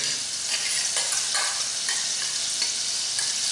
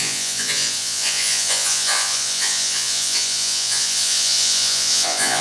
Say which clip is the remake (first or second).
second